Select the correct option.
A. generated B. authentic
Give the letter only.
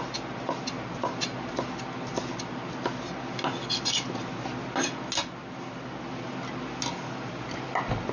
B